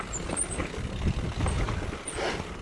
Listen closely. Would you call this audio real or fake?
real